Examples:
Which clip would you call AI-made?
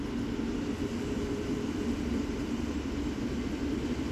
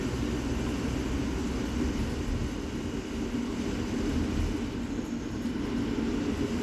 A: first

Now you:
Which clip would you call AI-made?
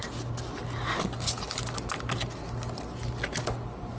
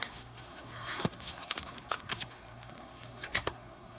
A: second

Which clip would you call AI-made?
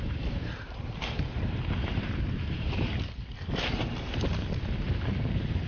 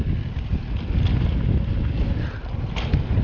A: first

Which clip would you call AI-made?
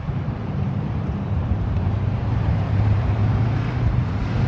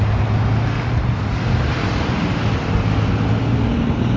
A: first